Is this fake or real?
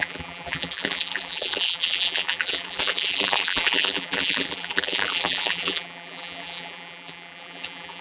fake